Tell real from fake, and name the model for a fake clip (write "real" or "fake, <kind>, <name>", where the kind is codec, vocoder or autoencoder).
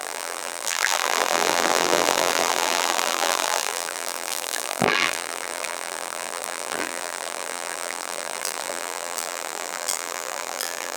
fake, vocoder, BigVGAN v2